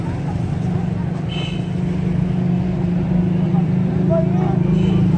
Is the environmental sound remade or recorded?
recorded